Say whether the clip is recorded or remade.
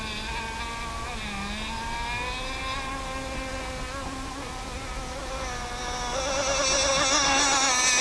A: recorded